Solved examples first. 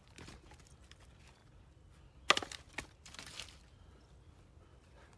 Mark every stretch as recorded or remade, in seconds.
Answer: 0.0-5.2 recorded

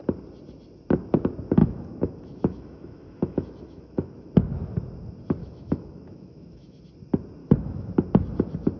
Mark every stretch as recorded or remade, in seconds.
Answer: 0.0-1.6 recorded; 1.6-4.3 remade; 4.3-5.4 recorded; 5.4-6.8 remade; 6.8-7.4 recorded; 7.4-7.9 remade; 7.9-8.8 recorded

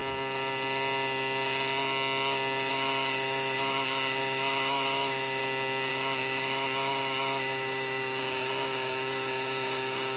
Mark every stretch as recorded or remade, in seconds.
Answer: 0.0-2.7 recorded; 2.7-5.4 remade; 5.4-5.9 recorded; 5.9-10.2 remade